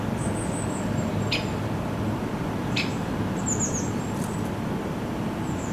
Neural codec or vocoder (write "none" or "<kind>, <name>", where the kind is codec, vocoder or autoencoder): none